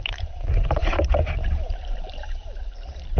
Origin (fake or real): fake